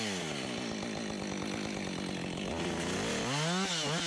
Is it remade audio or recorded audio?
recorded